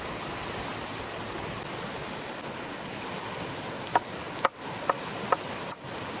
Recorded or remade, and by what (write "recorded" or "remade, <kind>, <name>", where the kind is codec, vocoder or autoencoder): recorded